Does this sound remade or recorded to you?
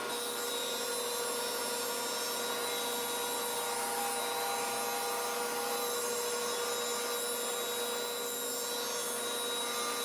recorded